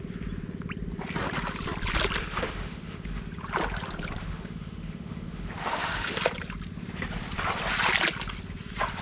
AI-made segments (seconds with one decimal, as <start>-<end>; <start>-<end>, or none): 2.2-3.2; 4.2-6.2